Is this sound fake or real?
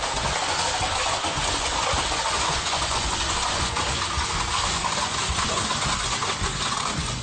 fake